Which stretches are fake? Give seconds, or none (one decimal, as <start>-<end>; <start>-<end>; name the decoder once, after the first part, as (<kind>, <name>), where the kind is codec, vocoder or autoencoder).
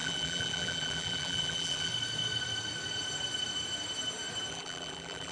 0.0-1.9 (vocoder, BigVGAN v2); 4.5-5.3